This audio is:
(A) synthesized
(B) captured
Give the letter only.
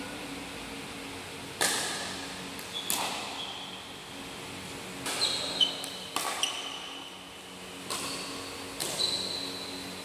B